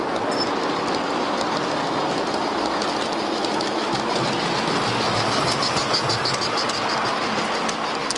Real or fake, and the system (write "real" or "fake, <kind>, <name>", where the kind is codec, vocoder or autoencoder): real